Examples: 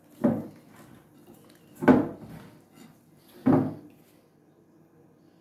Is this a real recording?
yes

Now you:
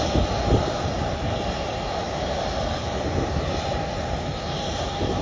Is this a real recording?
no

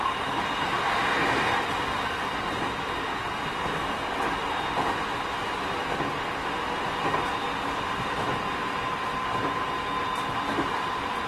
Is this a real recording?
yes